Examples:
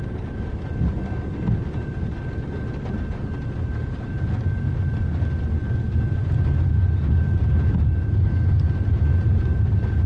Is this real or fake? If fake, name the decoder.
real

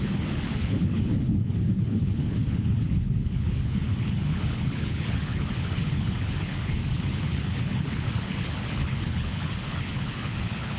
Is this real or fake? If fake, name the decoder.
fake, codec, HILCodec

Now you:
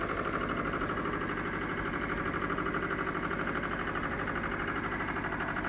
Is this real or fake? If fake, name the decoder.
real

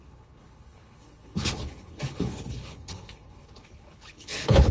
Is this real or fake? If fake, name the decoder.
fake, codec, HILCodec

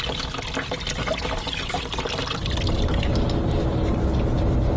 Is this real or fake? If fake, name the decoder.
real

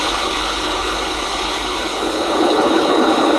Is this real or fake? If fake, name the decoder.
fake, codec, HILCodec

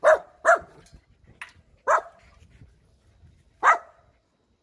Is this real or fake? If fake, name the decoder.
real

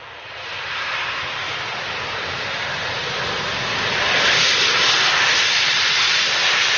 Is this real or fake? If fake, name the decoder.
real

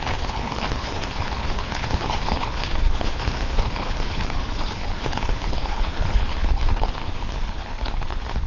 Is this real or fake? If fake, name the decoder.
fake, codec, HILCodec